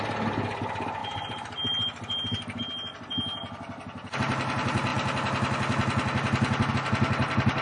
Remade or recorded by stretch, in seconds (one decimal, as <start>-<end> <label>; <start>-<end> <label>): 0.0-7.6 recorded